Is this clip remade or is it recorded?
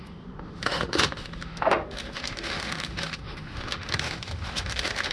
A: remade